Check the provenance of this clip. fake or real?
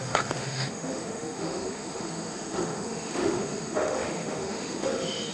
fake